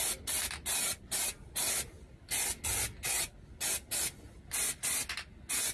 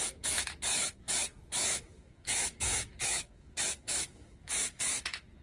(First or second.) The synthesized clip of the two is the second